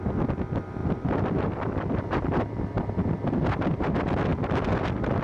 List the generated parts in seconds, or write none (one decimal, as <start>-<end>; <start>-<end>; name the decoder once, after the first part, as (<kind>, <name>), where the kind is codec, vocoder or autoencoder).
0.8-3.7 (vocoder, BigVGAN v2); 4.3-5.2